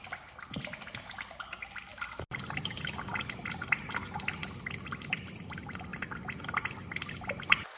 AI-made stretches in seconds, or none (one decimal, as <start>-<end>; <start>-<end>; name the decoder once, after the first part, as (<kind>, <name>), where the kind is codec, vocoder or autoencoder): none